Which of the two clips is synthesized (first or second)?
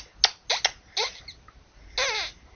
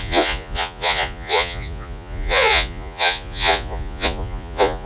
second